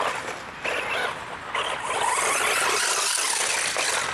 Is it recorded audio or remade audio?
recorded